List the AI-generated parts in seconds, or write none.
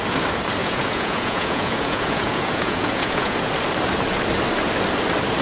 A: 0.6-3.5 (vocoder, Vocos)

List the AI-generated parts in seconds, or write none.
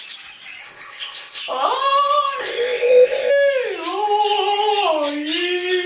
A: 0.6-1.4 (codec, ZipCodec); 2.4-3.3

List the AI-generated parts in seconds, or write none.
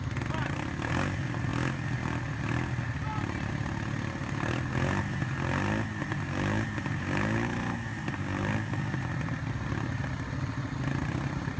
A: none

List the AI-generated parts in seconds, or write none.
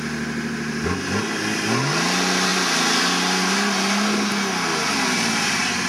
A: none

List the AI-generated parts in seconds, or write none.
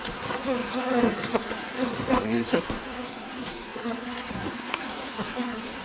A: 0.0-5.8 (codec, SNAC)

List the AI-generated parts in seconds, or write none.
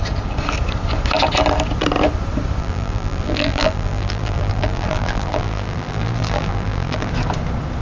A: 2.6-7.1 (vocoder, BigVGAN v2)